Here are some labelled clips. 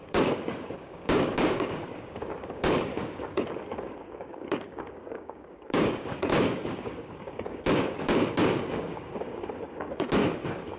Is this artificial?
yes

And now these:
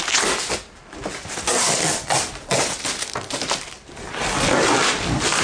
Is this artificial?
no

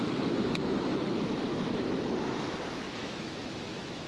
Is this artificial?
yes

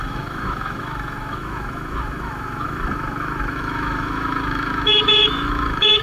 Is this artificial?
yes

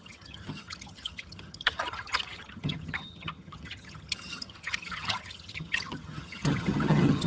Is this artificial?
yes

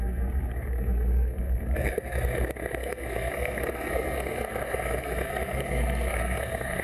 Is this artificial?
yes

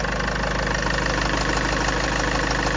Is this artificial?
no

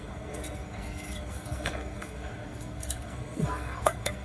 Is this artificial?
yes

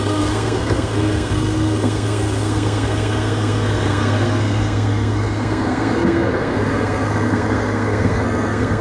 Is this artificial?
yes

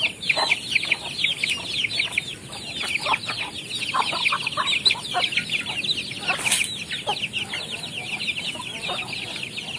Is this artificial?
no